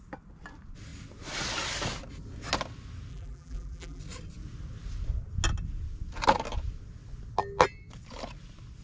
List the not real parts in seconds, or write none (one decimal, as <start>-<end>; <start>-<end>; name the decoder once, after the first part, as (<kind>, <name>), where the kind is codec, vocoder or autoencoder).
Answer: 3.1-4.0 (vocoder, BigVGAN v2)